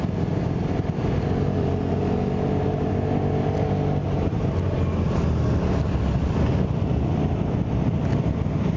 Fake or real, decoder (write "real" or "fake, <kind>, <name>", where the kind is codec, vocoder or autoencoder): real